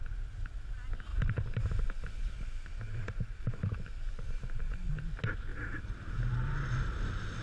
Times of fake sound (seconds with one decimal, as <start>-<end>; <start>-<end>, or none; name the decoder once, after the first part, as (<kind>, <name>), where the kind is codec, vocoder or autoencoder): 1.1-4.9 (vocoder, BigVGAN v2); 5.5-6.2